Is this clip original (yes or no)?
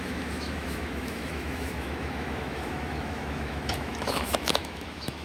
no